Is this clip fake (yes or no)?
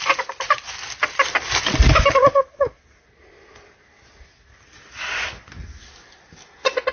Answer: no